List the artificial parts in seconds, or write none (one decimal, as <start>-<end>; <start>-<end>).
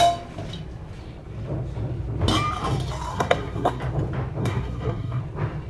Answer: 3.1-3.8; 4.4-5.2